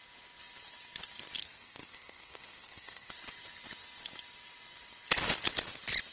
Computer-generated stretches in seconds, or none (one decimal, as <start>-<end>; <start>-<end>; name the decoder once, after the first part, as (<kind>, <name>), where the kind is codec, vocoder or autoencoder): 1.4-3.1 (codec, SNAC)